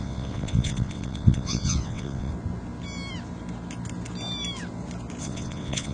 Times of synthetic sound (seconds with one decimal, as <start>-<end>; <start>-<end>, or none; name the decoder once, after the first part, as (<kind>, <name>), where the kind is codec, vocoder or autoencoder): 0.0-2.3 (vocoder, WaveNeXt); 5.2-5.9